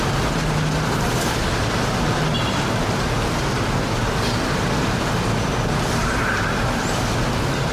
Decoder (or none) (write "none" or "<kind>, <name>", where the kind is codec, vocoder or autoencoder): none